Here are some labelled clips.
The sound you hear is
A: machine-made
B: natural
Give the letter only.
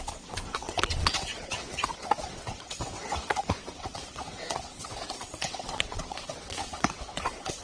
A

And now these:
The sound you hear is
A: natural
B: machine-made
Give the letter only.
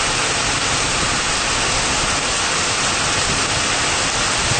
A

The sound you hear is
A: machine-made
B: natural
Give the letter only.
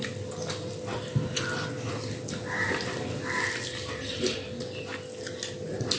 B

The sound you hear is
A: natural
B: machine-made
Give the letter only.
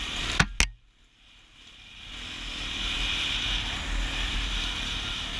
A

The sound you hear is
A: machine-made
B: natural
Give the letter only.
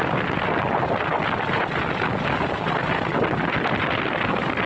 B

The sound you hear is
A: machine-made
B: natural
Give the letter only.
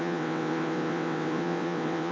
A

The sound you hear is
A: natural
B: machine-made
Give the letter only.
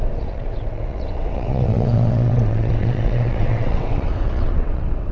B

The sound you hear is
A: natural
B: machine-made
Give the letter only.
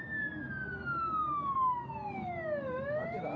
A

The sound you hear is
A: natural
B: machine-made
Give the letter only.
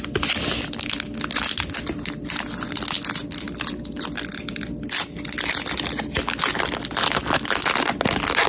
A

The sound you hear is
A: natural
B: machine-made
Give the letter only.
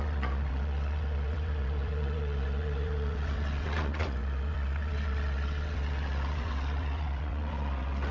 B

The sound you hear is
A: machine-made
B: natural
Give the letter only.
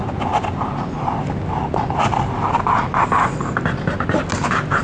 B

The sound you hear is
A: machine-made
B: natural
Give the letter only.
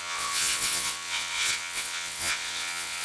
A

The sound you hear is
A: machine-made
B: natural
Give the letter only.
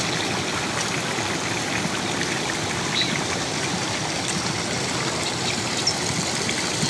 B